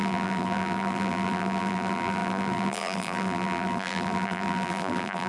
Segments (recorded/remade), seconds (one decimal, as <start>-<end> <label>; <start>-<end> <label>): 0.0-5.3 remade